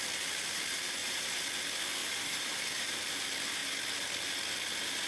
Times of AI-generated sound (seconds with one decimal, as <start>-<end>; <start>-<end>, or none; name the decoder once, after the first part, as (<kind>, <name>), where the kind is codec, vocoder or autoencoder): 1.0-1.5 (vocoder, BigVGAN v2); 2.0-3.0